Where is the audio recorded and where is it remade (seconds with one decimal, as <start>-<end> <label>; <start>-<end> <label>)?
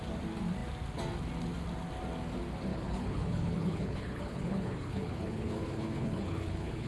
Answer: 0.0-2.7 recorded; 2.7-6.9 remade